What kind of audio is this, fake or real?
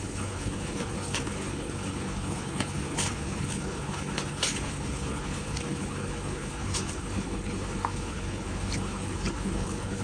fake